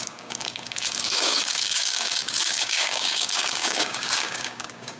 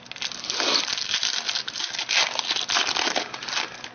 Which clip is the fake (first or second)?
first